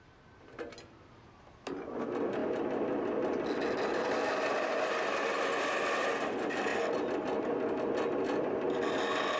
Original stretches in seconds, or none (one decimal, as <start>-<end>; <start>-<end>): 0.0-9.4